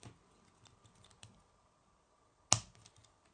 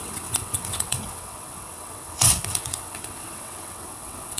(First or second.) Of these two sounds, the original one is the first